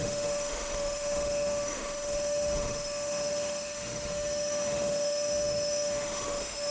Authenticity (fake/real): fake